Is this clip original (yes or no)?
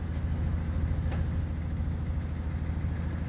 yes